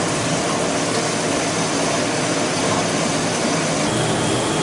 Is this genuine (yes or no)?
yes